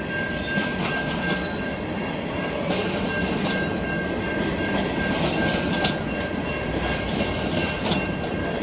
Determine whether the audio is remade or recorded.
recorded